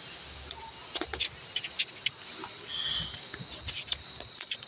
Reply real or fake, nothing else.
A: real